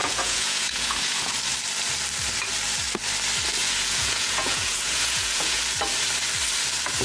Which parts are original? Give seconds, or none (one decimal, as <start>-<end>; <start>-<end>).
1.3-3.6; 5.6-7.0